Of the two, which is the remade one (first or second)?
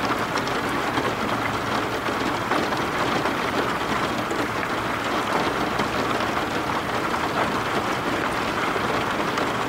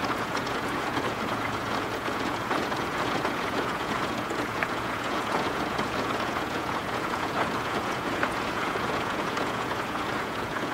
second